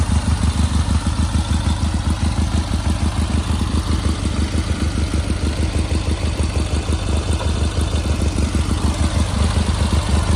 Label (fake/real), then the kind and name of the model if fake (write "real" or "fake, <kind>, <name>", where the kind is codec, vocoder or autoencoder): real